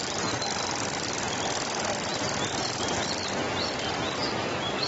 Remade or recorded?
recorded